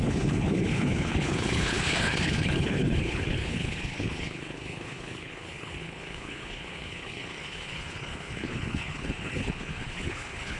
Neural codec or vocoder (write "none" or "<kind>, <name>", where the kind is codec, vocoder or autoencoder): codec, HILCodec